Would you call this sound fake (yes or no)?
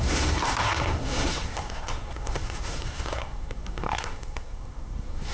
yes